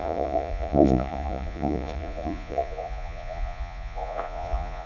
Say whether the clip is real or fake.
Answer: fake